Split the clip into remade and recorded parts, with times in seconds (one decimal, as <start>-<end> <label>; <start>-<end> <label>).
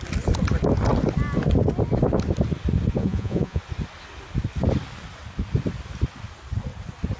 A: 0.0-3.0 recorded; 3.0-3.6 remade; 3.6-7.2 recorded